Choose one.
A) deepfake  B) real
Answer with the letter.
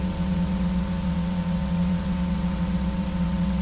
A